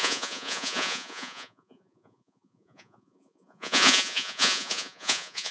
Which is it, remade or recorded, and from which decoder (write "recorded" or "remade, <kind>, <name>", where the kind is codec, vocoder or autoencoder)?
remade, vocoder, Vocos